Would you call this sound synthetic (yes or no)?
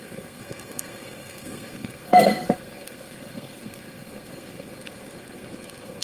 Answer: yes